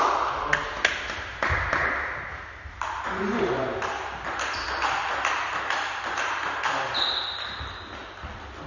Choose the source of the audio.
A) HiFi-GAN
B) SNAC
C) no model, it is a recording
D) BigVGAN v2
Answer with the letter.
C